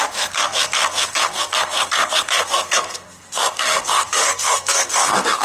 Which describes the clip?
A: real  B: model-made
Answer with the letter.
B